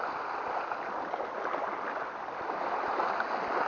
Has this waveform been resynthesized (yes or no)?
no